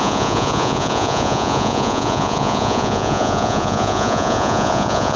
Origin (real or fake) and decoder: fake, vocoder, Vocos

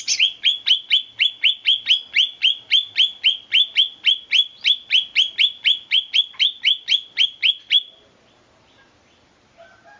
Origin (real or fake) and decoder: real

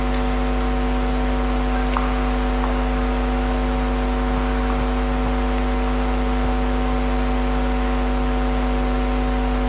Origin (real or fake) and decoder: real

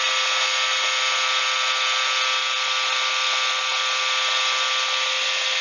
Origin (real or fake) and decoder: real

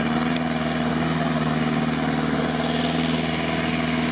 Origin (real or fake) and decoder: real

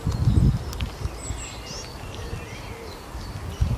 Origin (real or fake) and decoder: real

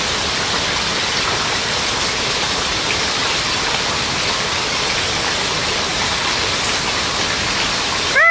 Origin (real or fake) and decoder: real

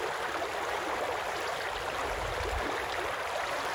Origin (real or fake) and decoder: real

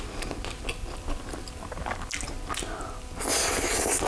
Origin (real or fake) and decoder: real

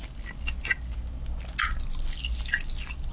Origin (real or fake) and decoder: real